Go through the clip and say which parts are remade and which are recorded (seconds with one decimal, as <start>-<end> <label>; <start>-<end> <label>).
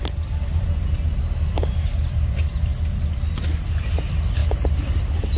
0.0-5.4 recorded